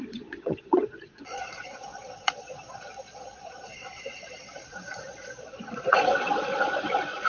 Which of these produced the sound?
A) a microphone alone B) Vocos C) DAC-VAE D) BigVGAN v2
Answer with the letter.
B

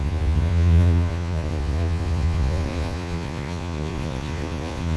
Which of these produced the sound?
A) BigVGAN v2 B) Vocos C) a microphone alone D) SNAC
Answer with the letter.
B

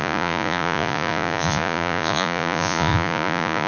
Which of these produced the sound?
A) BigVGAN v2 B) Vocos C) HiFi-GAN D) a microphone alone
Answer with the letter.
B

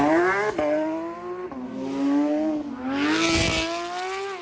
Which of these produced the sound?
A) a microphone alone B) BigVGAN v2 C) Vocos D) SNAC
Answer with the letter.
A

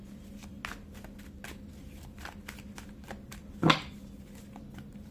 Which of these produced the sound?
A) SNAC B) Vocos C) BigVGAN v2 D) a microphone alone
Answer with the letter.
D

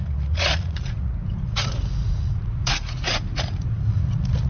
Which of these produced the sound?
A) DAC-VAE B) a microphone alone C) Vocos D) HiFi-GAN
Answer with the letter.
C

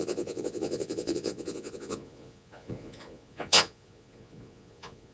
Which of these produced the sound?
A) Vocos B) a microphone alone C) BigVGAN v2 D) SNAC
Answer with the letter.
A